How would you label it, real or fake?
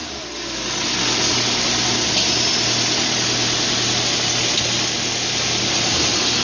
real